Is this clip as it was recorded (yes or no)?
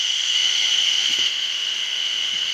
no